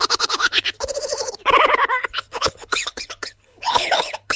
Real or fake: fake